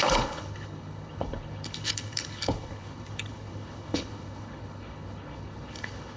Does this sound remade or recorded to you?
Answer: remade